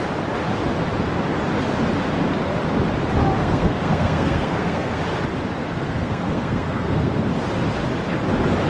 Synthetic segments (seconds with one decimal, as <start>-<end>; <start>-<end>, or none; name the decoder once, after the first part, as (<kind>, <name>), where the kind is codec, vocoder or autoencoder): 3.4-5.0 (codec, SNAC); 5.6-7.3